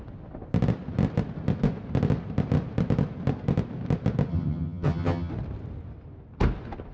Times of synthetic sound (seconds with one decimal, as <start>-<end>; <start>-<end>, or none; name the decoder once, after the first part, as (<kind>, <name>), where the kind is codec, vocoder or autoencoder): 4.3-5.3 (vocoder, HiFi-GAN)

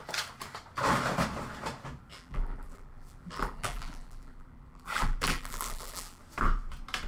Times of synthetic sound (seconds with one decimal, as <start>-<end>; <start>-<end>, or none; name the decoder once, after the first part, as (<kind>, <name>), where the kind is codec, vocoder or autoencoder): 2.1-6.2 (vocoder, BigVGAN v2)

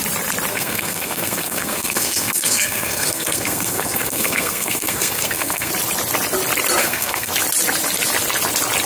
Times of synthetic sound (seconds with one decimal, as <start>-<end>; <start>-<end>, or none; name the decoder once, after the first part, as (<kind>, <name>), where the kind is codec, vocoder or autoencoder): 0.5-5.7 (codec, SNAC); 6.8-7.3

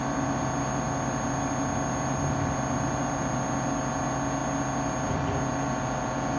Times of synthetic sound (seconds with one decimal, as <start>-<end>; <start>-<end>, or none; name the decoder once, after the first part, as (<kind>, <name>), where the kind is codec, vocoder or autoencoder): none

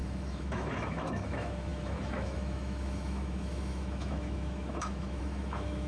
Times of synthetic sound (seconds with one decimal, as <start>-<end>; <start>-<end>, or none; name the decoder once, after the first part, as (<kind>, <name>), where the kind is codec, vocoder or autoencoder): 0.0-5.9 (autoencoder, DAC-VAE)

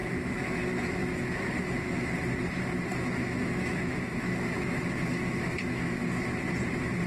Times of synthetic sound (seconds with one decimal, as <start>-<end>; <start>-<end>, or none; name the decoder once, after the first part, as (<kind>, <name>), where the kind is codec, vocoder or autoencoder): 0.0-2.1 (autoencoder, DAC-VAE); 2.9-6.0

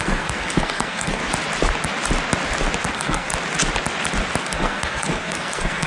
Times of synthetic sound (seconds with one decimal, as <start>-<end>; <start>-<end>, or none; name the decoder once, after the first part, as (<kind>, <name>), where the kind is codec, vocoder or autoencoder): 0.0-1.2 (codec, SNAC); 2.9-3.3; 4.4-5.9